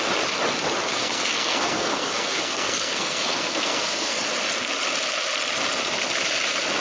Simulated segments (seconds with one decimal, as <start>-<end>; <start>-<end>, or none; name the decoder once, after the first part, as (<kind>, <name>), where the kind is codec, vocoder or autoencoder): 0.9-4.2 (codec, SNAC)